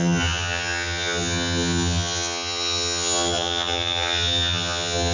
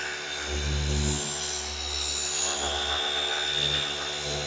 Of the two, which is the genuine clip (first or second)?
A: second